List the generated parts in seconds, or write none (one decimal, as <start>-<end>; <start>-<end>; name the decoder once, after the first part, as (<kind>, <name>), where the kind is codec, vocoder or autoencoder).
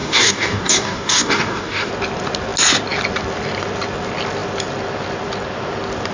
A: 0.0-1.9 (codec, DAC)